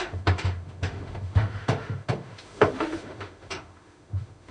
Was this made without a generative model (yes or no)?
no